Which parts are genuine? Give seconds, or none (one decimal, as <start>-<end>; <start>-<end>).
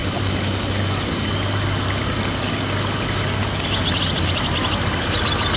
0.0-5.6